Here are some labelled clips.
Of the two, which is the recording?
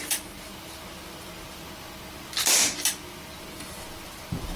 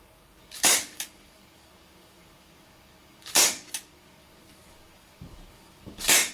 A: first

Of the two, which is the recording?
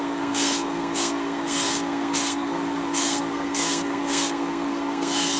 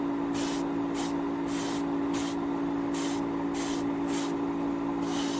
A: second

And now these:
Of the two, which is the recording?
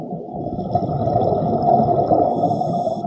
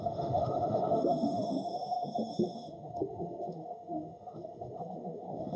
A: first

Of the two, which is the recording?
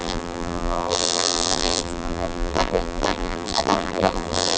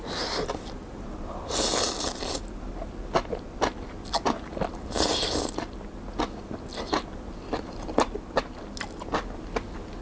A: second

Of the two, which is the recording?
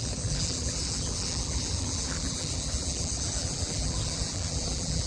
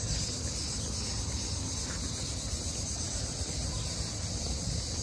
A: second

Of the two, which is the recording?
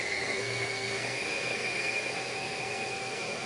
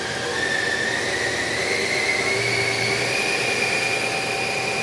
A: second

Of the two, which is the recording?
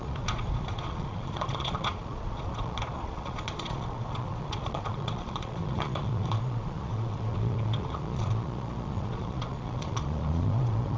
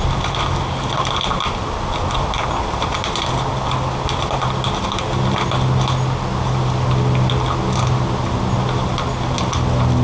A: second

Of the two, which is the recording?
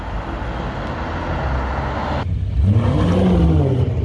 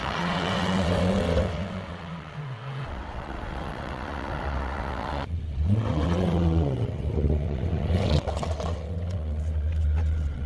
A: first